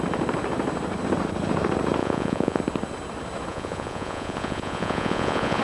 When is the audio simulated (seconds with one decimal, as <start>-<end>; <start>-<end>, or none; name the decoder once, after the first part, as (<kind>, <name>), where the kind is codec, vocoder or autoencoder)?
2.0-2.6 (vocoder, Vocos); 3.5-5.6